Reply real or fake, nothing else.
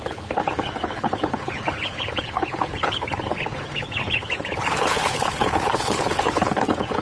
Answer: fake